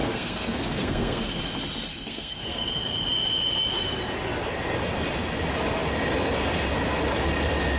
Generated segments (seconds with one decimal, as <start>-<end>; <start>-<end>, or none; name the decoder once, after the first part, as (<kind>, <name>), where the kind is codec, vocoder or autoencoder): 0.0-1.4 (codec, SNAC); 1.9-2.7